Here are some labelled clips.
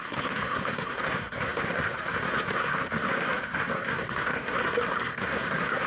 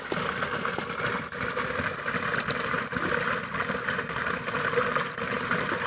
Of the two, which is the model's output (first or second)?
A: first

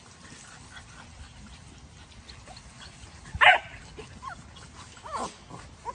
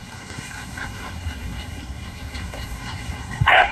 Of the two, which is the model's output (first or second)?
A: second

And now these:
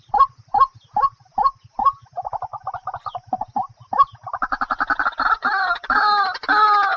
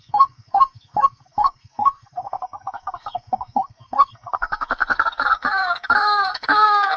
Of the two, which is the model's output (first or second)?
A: second